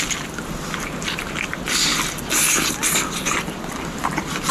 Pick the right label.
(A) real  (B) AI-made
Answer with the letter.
A